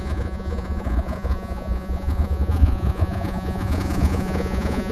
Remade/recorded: remade